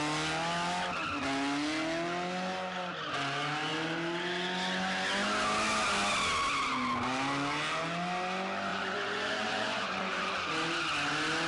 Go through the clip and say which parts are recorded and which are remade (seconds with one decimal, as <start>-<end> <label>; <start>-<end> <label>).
0.0-8.7 recorded; 8.7-10.5 remade; 10.5-11.5 recorded